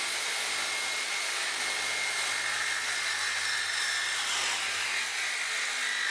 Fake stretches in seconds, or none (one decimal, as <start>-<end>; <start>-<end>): none